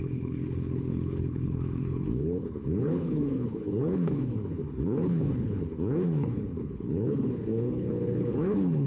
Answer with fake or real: fake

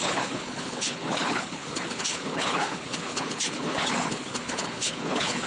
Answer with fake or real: fake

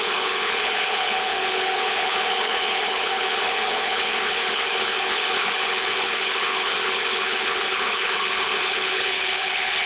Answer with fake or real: fake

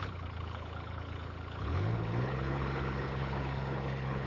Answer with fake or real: fake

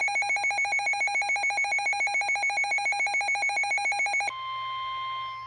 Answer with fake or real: real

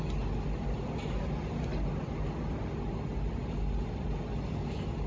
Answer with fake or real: real